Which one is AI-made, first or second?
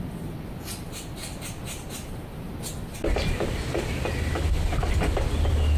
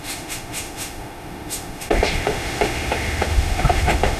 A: second